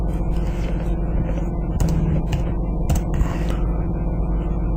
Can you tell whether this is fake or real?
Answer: real